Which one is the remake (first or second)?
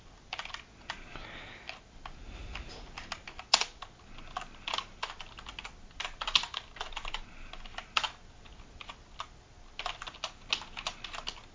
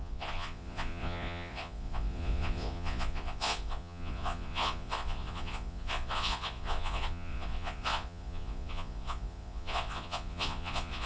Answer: second